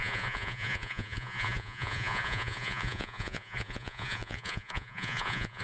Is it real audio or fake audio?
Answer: fake